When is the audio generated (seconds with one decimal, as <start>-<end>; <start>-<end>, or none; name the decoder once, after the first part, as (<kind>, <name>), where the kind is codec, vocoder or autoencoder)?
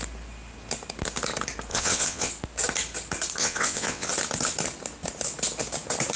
1.7-2.3 (vocoder, WaveNeXt); 3.4-4.1